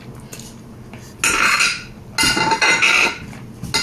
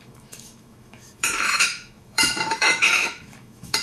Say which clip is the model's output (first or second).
second